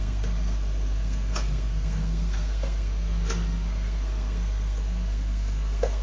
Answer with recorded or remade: remade